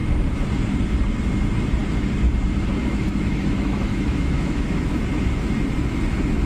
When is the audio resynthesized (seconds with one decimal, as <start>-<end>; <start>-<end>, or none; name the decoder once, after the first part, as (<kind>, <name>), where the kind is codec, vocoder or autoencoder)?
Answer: 2.8-5.0 (autoencoder, DAC-VAE)